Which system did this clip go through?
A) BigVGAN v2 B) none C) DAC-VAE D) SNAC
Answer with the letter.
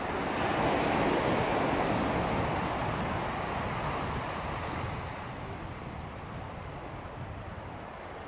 B